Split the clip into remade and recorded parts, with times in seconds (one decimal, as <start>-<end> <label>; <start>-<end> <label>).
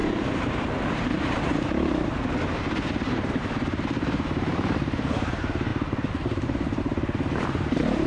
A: 0.0-2.2 remade; 2.2-2.9 recorded; 2.9-8.1 remade